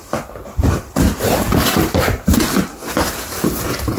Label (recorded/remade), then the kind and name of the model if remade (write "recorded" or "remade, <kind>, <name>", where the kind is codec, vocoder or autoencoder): recorded